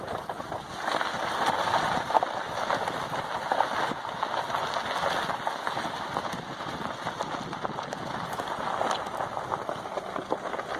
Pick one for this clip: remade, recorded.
recorded